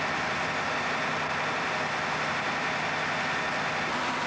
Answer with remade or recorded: recorded